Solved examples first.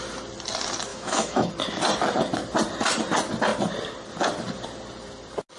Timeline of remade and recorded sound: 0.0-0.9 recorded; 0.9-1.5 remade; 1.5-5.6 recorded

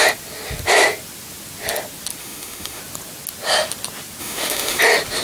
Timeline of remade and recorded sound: 0.0-2.2 recorded; 2.2-2.8 remade; 2.8-4.2 recorded; 4.2-4.8 remade; 4.8-5.2 recorded

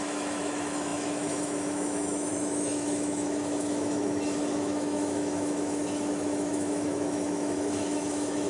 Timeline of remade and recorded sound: 0.0-8.5 remade